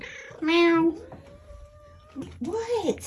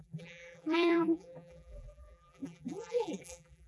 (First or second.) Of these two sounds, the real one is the first